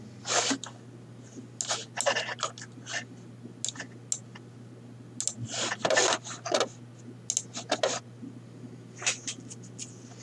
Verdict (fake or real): real